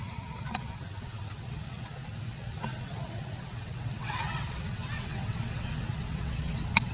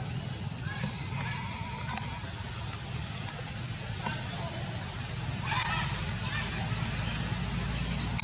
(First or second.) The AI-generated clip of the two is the first